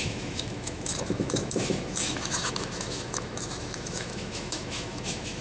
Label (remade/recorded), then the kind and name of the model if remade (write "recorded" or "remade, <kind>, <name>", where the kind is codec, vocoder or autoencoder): remade, autoencoder, DAC-VAE